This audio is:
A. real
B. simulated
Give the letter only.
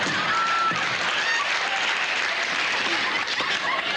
A